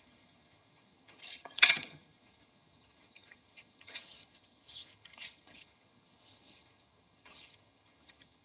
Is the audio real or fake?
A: fake